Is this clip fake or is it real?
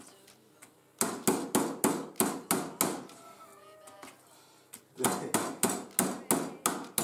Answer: real